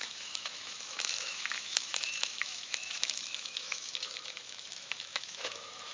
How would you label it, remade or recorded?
remade